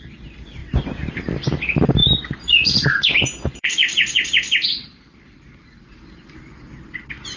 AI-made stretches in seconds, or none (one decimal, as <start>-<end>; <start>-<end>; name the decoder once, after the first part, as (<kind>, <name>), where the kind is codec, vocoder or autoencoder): 2.0-6.4 (vocoder, BigVGAN v2)

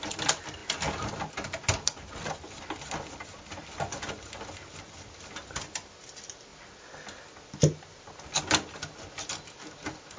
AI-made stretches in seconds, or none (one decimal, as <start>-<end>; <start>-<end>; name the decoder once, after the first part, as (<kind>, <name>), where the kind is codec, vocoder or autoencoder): none

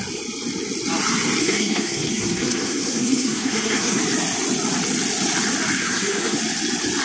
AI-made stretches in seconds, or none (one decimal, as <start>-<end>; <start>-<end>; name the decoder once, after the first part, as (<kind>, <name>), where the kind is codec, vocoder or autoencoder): 1.4-4.0 (codec, SNAC); 5.8-6.4

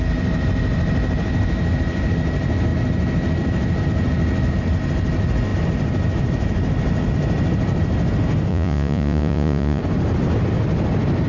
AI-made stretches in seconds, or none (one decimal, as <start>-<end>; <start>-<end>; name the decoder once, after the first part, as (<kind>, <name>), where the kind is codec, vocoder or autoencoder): 8.5-9.8 (vocoder, Vocos)